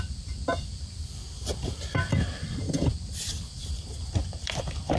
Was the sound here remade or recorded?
remade